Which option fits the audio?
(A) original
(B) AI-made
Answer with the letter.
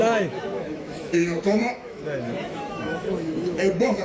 B